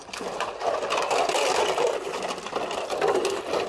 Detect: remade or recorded recorded